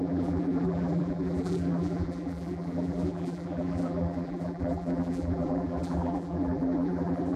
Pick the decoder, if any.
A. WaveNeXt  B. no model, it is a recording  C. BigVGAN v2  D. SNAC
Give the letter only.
C